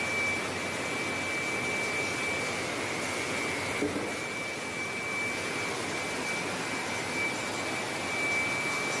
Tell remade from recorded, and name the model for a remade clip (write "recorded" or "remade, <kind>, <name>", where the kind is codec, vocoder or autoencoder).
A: recorded